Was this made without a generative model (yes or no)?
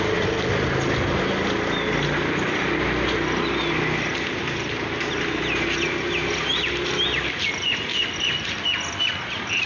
yes